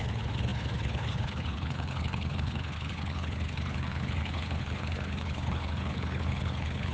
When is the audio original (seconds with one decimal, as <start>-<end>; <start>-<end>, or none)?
none